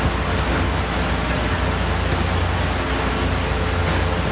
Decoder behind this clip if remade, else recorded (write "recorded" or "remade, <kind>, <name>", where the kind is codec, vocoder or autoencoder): recorded